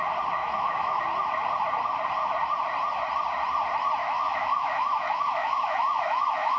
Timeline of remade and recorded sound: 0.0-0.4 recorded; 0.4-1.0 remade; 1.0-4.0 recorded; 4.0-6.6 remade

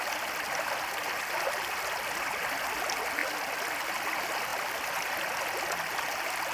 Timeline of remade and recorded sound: 0.0-6.5 recorded